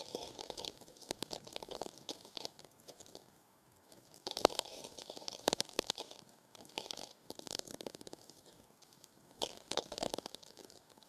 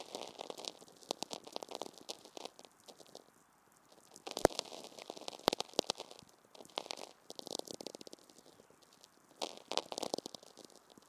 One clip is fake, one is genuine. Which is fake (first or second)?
first